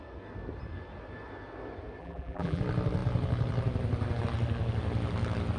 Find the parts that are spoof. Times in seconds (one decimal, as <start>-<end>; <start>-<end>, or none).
2.0-2.6